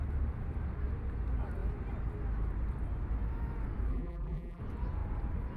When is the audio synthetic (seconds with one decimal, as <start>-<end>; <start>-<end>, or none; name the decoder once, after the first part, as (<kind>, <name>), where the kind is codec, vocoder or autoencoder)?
3.9-4.6 (vocoder, BigVGAN v2)